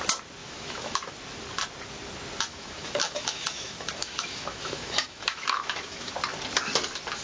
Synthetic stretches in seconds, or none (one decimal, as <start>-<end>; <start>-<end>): 0.4-1.1; 2.5-6.1